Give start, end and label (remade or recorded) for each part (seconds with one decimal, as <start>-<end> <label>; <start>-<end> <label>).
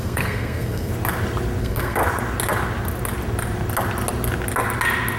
0.0-0.9 remade; 0.9-1.6 recorded; 1.6-2.0 remade; 2.0-5.2 recorded